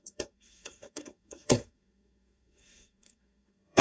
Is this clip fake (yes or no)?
yes